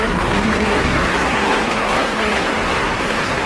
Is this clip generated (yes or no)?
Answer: yes